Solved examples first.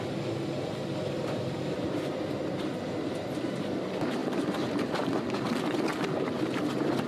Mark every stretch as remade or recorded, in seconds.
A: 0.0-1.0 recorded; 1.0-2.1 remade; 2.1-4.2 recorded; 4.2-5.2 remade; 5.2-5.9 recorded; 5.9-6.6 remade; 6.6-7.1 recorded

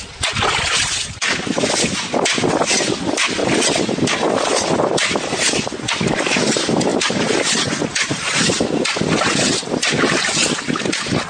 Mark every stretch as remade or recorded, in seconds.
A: 0.0-11.3 recorded

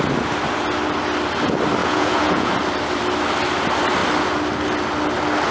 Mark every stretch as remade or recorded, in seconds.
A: 0.0-1.8 recorded; 1.8-2.5 remade; 2.5-5.5 recorded

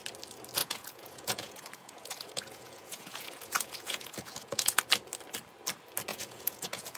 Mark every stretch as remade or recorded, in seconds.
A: 0.0-0.6 recorded; 0.6-4.8 remade; 4.8-6.1 recorded; 6.1-7.0 remade

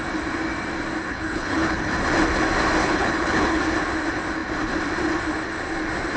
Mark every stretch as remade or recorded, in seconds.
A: 0.0-1.1 recorded; 1.1-1.9 remade; 1.9-2.8 recorded; 2.8-3.6 remade; 3.6-6.2 recorded